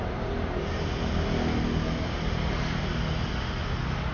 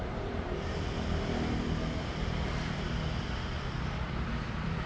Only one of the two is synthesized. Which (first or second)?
second